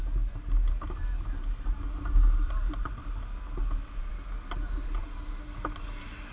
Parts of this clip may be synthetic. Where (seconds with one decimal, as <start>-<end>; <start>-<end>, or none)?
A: none